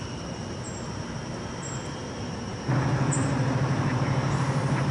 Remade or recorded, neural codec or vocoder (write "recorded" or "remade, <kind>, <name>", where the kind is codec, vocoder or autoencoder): remade, vocoder, BigVGAN v2